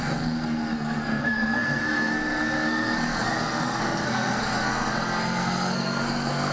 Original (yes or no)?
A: no